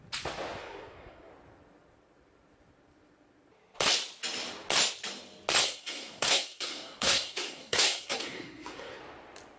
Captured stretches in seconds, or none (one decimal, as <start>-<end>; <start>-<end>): 0.0-0.6; 1.3-5.6; 9.0-9.6